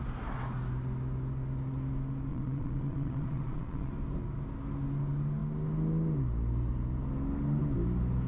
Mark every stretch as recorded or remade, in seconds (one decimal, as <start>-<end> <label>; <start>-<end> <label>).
0.0-2.3 recorded; 2.3-3.9 remade; 3.9-8.3 recorded